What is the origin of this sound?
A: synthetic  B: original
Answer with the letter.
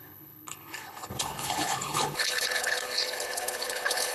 A